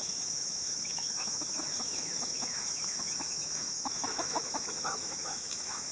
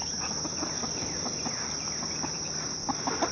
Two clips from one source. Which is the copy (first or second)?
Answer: first